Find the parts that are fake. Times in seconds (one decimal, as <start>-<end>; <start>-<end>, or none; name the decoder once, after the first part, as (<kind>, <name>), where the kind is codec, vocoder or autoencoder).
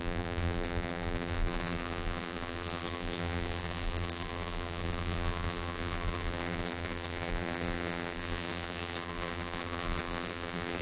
0.0-10.8 (vocoder, BigVGAN v2)